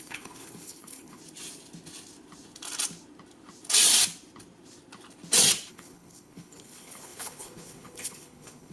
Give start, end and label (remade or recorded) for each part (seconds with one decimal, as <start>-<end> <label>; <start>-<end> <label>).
0.0-1.2 remade; 1.2-5.7 recorded; 5.7-8.7 remade